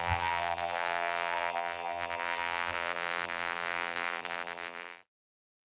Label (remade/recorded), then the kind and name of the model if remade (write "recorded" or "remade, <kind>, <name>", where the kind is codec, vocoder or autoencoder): remade, vocoder, BigVGAN v2